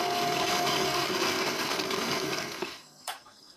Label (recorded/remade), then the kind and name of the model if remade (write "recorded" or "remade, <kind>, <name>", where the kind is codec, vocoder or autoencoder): remade, codec, SNAC